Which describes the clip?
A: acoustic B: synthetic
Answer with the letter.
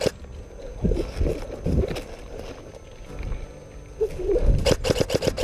A